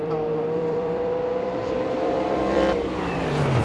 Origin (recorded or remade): remade